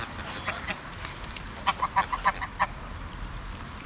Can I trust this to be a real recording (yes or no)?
no